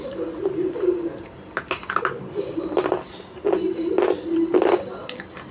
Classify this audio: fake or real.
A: real